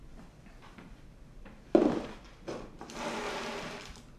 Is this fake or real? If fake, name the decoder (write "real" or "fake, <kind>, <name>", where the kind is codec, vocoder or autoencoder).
real